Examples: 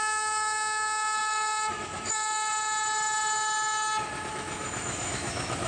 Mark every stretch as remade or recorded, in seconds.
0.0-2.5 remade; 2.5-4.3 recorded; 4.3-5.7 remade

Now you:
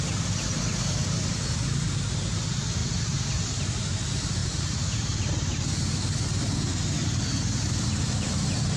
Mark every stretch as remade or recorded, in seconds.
0.0-2.8 recorded; 2.8-4.0 remade; 4.0-4.4 recorded; 4.4-5.6 remade; 5.6-8.8 recorded

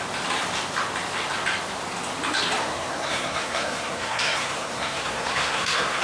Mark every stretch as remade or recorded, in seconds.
0.0-2.6 recorded; 2.6-6.0 remade

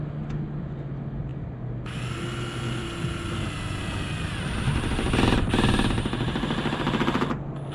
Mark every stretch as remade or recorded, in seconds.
0.0-7.7 recorded

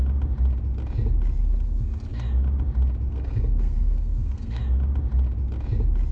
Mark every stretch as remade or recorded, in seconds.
0.0-3.1 recorded; 3.1-4.6 remade; 4.6-6.1 recorded

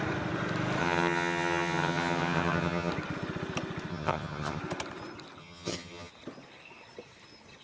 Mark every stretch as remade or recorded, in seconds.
0.0-0.8 recorded; 0.8-2.9 remade; 2.9-3.9 recorded; 3.9-4.6 remade; 4.6-5.4 recorded; 5.4-6.1 remade; 6.1-7.6 recorded

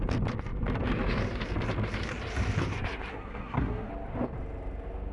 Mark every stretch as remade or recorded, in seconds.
0.0-3.1 recorded; 3.1-3.9 remade; 3.9-5.1 recorded